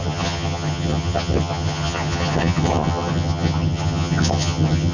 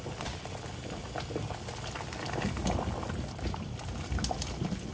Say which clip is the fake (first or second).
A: first